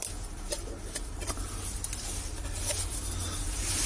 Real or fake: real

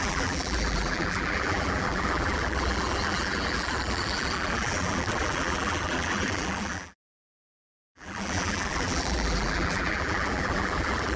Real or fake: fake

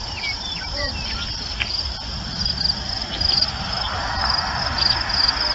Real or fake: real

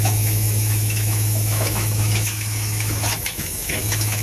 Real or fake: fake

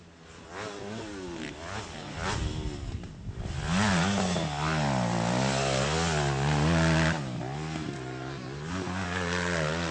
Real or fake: real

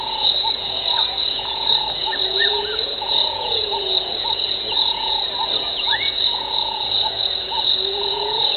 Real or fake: fake